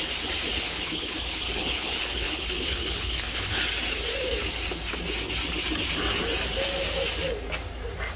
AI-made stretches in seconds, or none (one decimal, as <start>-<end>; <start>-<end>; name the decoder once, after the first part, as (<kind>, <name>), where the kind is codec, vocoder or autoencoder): 0.5-3.6 (codec, HILCodec)